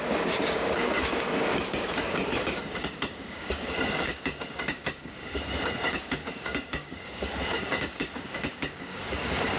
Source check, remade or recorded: remade